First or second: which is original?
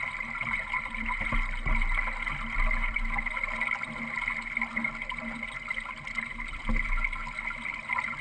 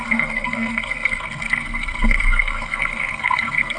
first